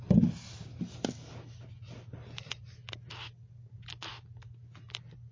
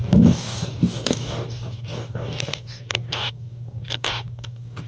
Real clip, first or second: first